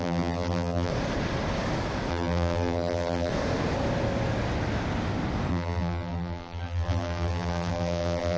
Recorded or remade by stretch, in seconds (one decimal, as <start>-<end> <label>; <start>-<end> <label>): 0.0-0.9 remade; 0.9-2.1 recorded; 2.1-3.3 remade; 3.3-5.5 recorded; 5.5-8.4 remade